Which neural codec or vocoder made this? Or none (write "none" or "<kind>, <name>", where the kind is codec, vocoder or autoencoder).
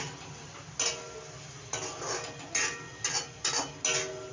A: none